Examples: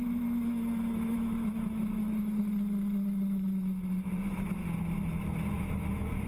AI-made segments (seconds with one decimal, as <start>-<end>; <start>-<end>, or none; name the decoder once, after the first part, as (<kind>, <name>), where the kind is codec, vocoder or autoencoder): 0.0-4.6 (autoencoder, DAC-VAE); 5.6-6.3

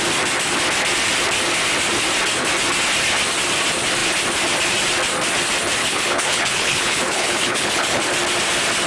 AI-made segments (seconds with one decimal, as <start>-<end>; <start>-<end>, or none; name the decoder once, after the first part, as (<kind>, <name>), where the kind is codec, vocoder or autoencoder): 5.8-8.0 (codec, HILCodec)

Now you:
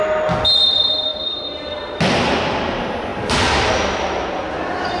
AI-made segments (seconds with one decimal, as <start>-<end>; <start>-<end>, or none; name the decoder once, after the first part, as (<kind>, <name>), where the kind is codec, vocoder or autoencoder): 1.1-1.9 (vocoder, BigVGAN v2)

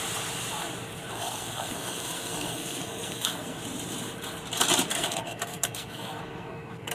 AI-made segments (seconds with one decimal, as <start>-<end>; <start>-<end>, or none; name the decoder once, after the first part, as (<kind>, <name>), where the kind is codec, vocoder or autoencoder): 1.1-3.6 (codec, SNAC); 4.9-6.9

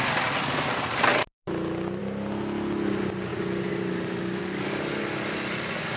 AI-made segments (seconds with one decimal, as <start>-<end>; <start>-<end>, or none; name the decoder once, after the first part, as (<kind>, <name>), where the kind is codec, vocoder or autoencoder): none